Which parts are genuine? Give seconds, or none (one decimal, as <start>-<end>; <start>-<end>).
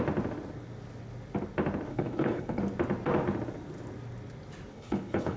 0.0-1.9; 2.6-4.7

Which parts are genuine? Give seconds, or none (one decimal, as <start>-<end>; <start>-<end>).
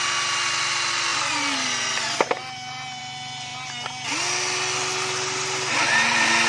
0.0-6.5